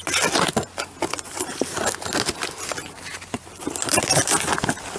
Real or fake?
real